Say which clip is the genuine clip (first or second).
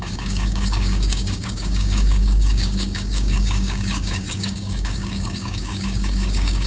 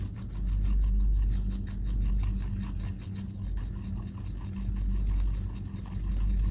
second